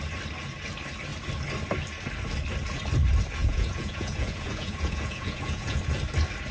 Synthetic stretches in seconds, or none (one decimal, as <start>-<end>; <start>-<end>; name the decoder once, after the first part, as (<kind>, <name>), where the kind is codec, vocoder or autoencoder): 3.4-5.8 (vocoder, Vocos)